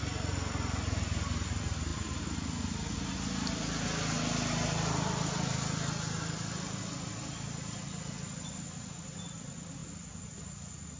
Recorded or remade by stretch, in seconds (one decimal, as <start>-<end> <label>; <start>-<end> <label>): 0.0-11.0 recorded